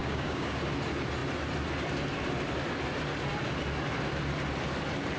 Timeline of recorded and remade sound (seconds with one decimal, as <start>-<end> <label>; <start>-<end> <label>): 0.0-0.6 remade; 0.6-5.2 recorded